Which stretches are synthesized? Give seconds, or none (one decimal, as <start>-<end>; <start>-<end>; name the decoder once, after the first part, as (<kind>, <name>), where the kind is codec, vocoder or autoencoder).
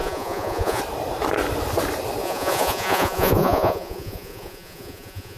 0.0-0.8 (vocoder, Vocos); 2.2-5.4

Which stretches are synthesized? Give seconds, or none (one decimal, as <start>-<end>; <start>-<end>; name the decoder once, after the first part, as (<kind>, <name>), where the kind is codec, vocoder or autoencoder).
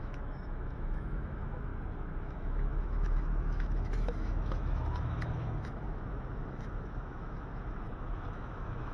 0.0-1.7 (autoencoder, DAC-VAE); 2.2-8.9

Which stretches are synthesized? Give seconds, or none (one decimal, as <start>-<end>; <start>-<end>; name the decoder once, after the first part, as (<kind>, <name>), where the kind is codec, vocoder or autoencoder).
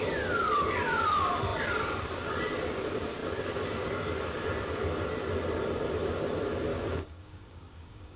6.7-8.2 (codec, DAC)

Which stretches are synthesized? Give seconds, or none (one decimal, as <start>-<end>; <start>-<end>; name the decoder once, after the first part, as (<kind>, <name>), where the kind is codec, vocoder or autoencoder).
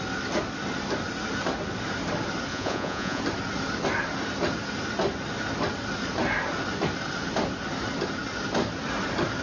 2.5-3.2 (vocoder, Vocos)